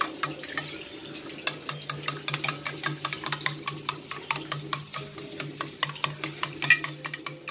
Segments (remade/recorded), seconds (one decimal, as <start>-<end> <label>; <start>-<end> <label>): 0.0-7.5 recorded